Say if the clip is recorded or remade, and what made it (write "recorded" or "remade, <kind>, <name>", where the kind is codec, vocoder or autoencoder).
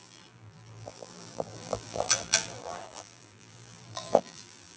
remade, vocoder, BigVGAN v2